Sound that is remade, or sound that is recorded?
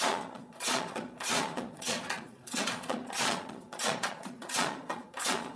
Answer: remade